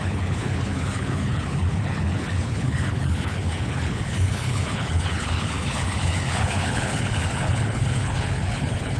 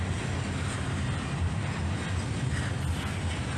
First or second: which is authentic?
second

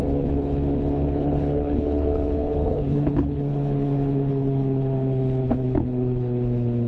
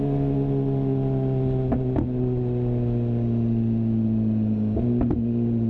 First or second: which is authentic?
second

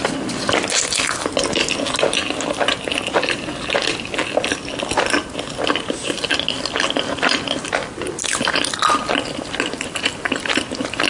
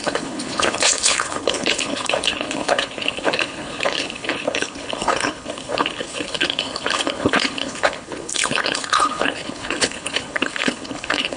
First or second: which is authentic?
first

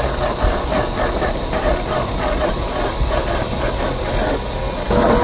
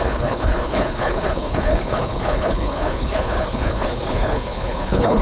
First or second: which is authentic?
first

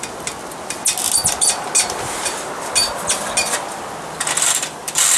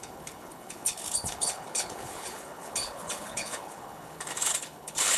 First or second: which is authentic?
first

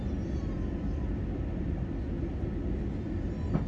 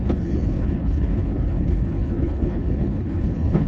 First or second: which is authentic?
first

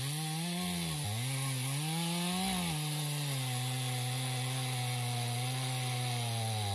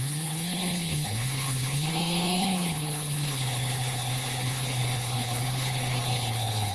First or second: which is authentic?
first